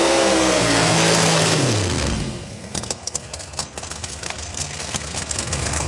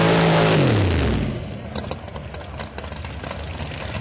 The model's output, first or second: first